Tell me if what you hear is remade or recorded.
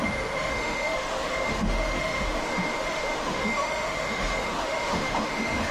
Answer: remade